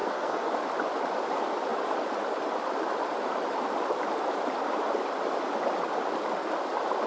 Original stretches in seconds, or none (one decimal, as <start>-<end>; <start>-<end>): 0.5-7.1